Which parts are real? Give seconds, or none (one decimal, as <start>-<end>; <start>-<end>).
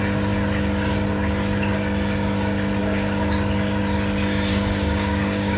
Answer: 0.0-4.5